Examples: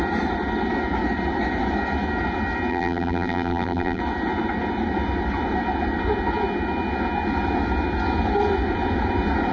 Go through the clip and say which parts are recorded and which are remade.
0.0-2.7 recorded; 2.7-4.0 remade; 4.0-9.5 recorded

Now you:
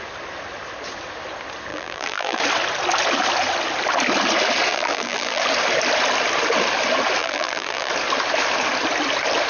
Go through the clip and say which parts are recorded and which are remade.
0.0-1.7 recorded; 1.7-2.4 remade; 2.4-4.7 recorded; 4.7-5.4 remade; 5.4-7.2 recorded; 7.2-7.9 remade; 7.9-9.5 recorded

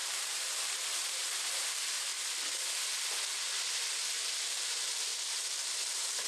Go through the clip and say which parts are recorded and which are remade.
0.0-2.1 remade; 2.1-4.2 recorded; 4.2-5.1 remade; 5.1-5.8 recorded; 5.8-6.3 remade

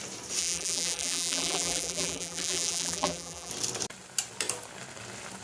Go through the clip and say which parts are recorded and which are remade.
0.0-0.4 recorded; 0.4-3.5 remade; 3.5-5.4 recorded